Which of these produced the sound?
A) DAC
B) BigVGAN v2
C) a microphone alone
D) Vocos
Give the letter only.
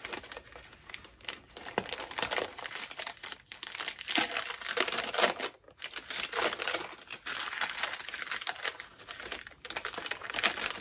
C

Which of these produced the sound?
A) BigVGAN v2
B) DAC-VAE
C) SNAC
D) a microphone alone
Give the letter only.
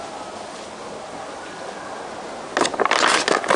D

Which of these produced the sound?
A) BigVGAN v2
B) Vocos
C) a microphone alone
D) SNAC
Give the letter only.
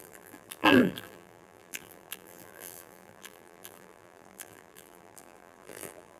A